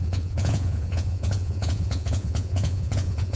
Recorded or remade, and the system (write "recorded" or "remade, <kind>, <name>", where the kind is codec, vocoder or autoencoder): remade, vocoder, Vocos